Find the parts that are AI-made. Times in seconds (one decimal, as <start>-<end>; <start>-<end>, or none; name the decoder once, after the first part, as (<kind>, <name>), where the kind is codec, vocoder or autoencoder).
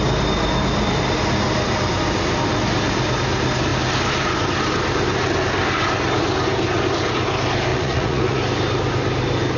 7.7-8.4 (vocoder, Vocos)